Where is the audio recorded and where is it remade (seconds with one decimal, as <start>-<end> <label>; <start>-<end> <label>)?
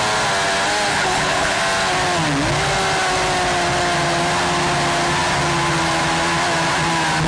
0.0-0.9 recorded; 0.9-1.6 remade; 1.6-7.3 recorded